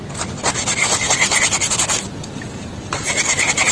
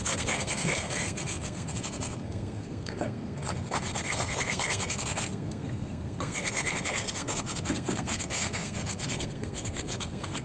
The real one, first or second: first